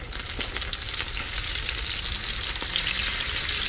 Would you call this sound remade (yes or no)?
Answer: no